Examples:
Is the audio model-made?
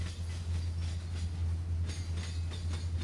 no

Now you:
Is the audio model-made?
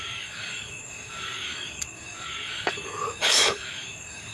yes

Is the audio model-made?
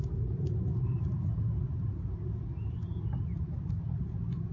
no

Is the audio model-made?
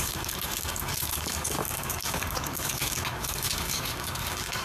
yes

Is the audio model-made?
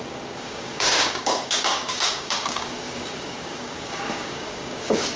yes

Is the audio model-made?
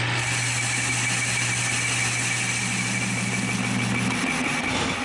no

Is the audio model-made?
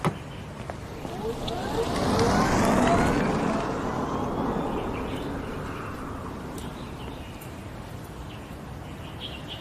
no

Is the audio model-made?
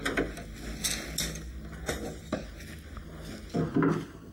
no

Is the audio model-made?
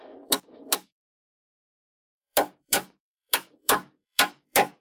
yes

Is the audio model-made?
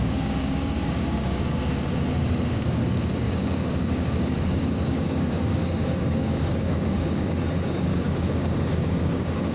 yes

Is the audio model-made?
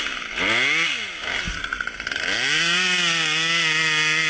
no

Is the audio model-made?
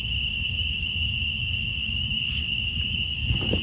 yes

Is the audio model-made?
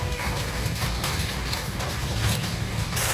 yes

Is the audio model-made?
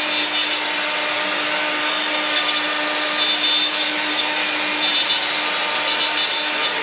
no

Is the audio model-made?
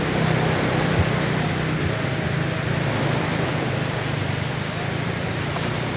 no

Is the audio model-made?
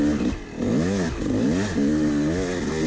no